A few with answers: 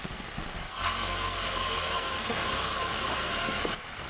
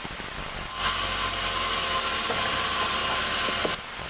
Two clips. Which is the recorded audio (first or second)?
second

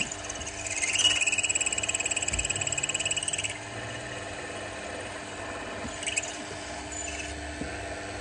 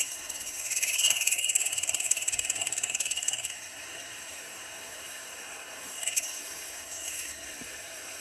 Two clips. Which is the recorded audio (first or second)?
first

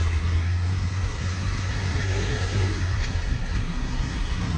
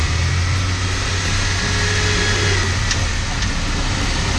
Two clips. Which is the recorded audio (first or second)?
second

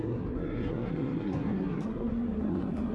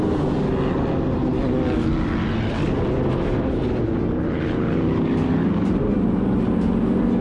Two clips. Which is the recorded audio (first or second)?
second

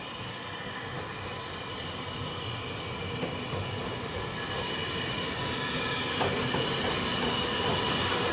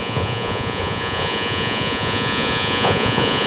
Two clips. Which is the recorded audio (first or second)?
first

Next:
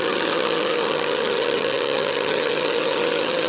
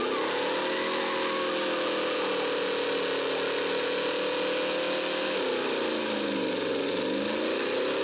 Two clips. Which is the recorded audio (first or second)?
second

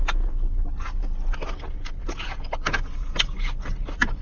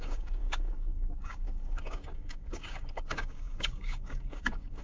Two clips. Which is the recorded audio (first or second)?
first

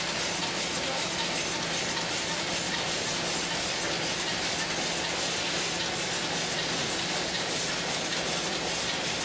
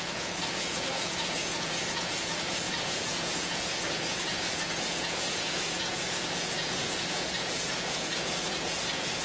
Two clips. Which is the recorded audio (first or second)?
first